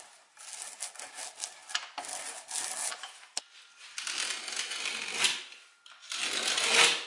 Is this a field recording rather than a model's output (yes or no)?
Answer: yes